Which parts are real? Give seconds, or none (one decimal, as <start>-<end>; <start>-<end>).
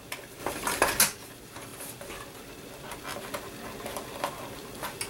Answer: 0.0-0.4; 1.0-5.1